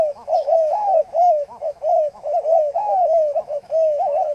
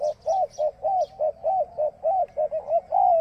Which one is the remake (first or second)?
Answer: first